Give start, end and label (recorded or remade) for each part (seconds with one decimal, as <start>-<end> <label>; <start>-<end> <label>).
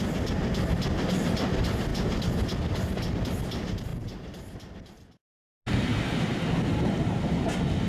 0.0-7.9 recorded